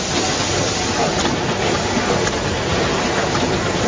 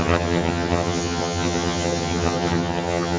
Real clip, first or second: first